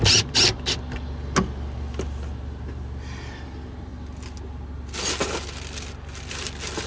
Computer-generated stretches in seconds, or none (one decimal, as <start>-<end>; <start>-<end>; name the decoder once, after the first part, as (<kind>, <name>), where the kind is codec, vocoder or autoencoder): none